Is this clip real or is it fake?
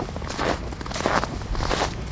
real